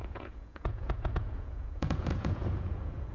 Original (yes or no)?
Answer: no